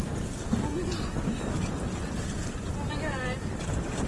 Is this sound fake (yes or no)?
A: no